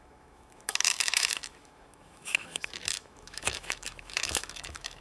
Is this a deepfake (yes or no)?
yes